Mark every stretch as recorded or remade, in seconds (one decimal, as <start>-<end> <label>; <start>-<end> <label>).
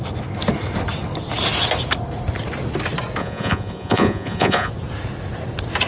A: 0.0-3.2 recorded; 3.2-4.7 remade; 4.7-5.9 recorded